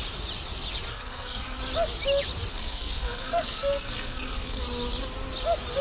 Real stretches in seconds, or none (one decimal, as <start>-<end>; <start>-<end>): 0.0-0.9; 1.6-2.5; 4.6-5.8